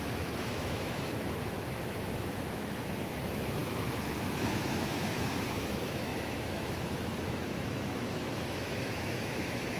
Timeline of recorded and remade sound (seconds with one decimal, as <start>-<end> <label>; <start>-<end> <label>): 0.0-9.8 remade